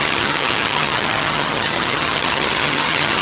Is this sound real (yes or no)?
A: no